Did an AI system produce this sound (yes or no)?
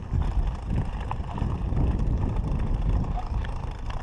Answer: no